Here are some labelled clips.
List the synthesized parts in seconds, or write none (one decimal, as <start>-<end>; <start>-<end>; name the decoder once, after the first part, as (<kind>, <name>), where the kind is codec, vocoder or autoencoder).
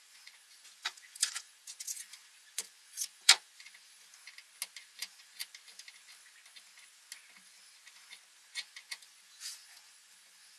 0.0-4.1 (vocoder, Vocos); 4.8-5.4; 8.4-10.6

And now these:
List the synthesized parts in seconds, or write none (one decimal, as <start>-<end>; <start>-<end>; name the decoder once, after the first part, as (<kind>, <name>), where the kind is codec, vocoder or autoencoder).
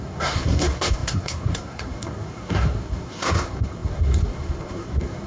0.0-5.3 (codec, SNAC)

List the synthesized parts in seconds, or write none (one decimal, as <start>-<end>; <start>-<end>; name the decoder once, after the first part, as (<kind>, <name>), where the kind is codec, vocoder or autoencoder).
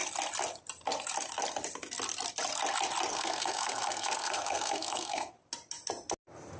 3.1-5.3 (codec, SNAC)